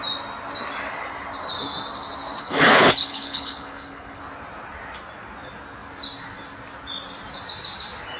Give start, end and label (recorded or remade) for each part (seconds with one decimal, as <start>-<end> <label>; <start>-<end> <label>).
0.0-2.4 recorded; 2.4-4.2 remade; 4.2-8.2 recorded